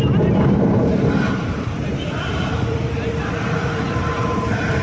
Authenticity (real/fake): fake